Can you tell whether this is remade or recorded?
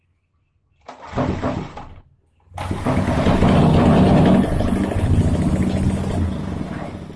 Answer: recorded